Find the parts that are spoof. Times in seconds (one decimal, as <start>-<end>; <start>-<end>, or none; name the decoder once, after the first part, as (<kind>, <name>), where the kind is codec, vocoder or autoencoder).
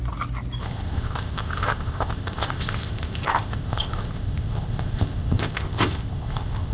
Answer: 0.6-6.7 (codec, ZipCodec)